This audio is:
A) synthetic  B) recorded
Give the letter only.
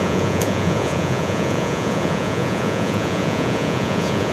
A